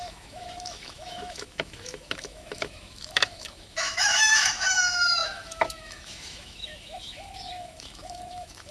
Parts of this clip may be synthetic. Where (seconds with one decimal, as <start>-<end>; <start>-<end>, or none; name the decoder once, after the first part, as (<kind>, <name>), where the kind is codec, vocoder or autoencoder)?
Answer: 0.0-8.7 (autoencoder, DAC-VAE)